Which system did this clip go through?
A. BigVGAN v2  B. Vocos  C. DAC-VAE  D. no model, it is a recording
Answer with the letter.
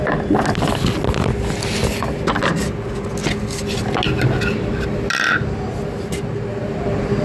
D